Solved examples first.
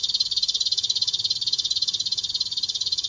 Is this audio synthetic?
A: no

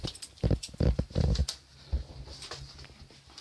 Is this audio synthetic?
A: no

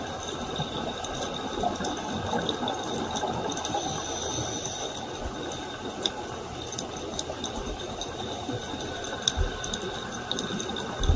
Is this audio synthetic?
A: no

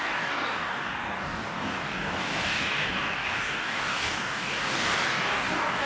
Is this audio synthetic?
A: yes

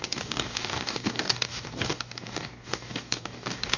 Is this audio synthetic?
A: yes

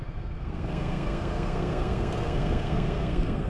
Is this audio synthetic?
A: yes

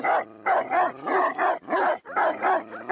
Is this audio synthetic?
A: no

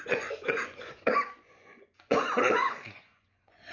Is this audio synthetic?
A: yes